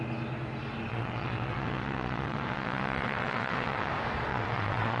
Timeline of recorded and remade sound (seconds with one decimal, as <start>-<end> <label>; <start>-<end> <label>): 0.0-0.9 recorded; 0.9-3.9 remade; 3.9-4.3 recorded; 4.3-5.0 remade